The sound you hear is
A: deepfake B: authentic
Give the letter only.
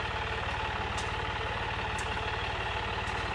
B